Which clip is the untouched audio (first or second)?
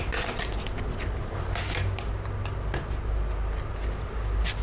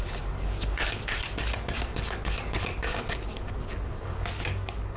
first